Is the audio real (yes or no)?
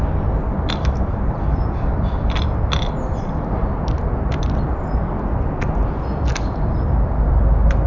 yes